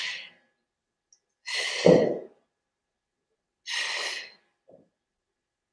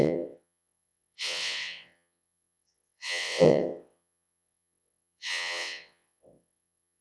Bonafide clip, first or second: first